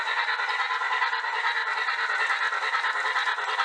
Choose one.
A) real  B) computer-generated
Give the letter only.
A